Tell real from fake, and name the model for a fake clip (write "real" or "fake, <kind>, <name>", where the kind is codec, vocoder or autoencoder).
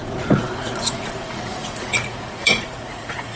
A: fake, vocoder, Vocos